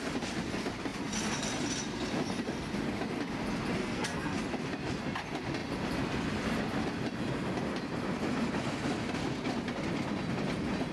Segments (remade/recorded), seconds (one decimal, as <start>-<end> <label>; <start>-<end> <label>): 0.0-3.8 recorded; 3.8-4.4 remade; 4.4-10.9 recorded